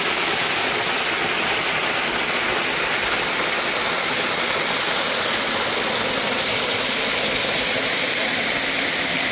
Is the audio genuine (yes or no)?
yes